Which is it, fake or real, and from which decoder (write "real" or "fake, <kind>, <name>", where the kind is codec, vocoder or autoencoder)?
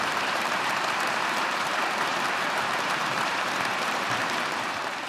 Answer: fake, vocoder, BigVGAN v2